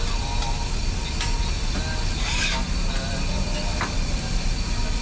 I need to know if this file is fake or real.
real